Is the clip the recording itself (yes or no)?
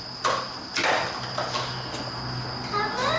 yes